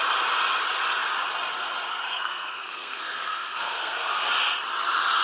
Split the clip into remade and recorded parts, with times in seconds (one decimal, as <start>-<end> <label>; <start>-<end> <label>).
0.0-1.9 recorded; 1.9-4.2 remade; 4.2-5.2 recorded